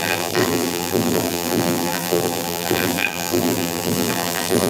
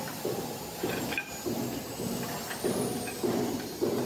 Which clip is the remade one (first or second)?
first